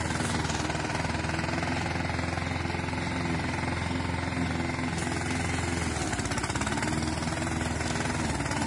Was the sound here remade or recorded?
recorded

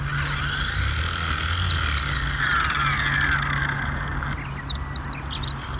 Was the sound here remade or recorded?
recorded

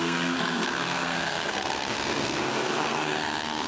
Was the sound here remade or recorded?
remade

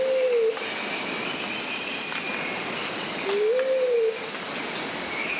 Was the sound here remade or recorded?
recorded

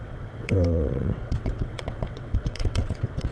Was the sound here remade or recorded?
remade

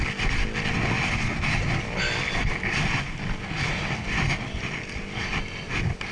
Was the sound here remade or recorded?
recorded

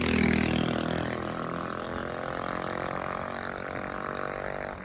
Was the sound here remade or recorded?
recorded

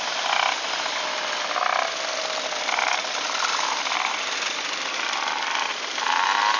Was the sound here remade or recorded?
recorded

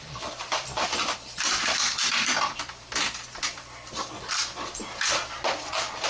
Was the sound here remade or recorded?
remade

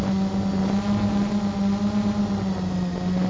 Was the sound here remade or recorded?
recorded